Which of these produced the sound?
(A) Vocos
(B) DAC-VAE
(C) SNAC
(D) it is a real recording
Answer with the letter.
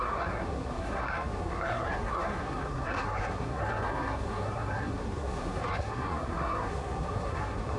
C